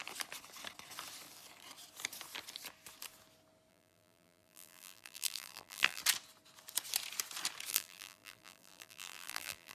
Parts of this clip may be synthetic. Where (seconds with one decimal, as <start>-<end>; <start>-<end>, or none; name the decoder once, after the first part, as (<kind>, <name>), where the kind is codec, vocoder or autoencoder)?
3.7-6.0 (vocoder, BigVGAN v2); 7.7-9.7